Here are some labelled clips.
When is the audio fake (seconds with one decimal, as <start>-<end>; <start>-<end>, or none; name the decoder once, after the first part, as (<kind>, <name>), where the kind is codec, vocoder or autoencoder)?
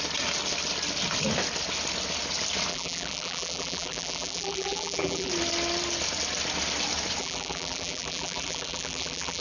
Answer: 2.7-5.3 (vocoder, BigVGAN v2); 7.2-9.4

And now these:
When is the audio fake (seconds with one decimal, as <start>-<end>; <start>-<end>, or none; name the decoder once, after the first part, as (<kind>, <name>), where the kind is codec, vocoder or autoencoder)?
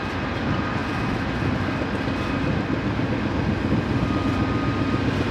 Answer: none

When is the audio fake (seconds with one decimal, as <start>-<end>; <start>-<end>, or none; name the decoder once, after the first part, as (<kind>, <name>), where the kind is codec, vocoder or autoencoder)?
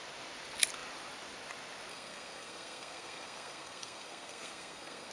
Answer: 1.9-5.1 (codec, SNAC)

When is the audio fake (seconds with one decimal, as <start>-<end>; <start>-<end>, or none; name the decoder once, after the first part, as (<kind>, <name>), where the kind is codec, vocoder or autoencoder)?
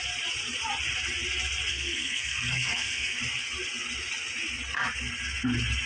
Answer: 1.7-3.2 (codec, SNAC)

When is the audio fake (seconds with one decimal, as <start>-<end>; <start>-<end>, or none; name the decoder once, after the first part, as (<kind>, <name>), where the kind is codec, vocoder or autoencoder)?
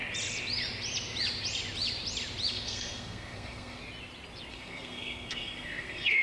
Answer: 2.5-3.8 (codec, SNAC); 4.5-6.2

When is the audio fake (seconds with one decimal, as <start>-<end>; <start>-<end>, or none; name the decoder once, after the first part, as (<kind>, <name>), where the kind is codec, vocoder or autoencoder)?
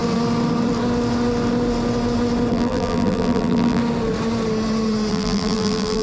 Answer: 2.5-3.8 (vocoder, BigVGAN v2); 5.1-6.0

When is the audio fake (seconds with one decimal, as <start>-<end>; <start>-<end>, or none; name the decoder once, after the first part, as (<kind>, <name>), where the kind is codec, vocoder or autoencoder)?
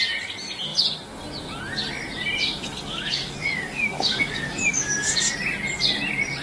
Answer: 2.4-5.3 (codec, DAC)